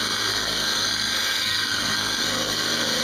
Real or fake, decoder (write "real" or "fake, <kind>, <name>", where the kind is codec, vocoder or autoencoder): fake, codec, SNAC